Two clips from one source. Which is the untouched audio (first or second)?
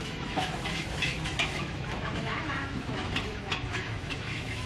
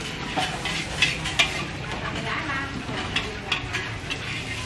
second